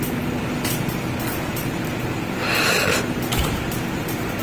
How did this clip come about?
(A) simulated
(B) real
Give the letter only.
B